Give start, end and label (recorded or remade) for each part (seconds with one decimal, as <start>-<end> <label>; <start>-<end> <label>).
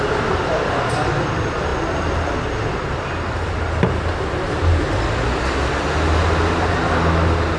0.0-7.6 recorded